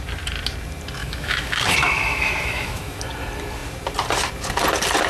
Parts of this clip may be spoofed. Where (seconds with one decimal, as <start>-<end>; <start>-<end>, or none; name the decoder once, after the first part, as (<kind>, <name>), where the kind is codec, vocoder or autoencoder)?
1.0-3.0 (autoencoder, DAC-VAE)